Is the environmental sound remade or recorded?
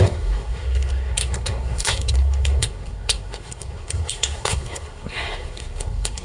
remade